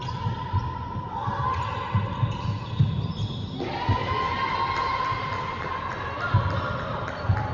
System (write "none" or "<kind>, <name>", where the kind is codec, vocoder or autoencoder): none